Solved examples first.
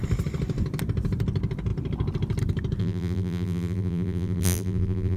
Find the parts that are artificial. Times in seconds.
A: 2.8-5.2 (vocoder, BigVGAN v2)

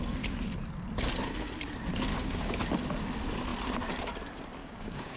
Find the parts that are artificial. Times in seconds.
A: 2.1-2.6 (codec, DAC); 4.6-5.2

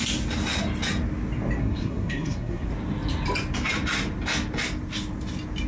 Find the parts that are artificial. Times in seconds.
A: 1.6-2.7 (codec, SNAC)

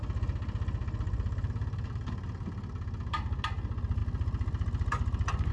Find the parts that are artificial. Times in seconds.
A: none

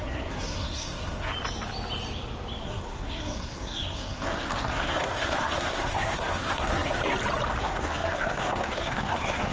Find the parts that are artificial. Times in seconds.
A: 0.0-1.3 (codec, SNAC); 2.6-7.0; 7.6-9.5

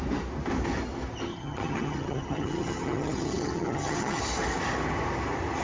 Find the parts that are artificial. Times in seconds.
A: 1.3-4.2 (vocoder, HiFi-GAN)